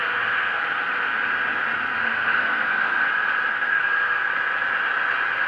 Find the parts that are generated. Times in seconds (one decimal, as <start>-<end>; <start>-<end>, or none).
0.0-0.6; 2.0-3.1; 3.5-4.2